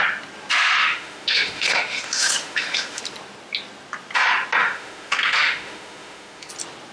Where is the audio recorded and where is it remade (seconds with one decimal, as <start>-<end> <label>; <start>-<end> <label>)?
0.0-0.8 recorded; 0.8-3.0 remade; 3.0-4.6 recorded; 4.6-6.5 remade; 6.5-6.9 recorded